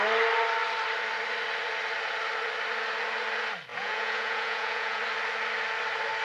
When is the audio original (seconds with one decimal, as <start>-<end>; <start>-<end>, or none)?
0.0-3.7; 5.0-6.2